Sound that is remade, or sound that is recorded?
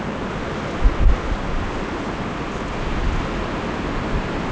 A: recorded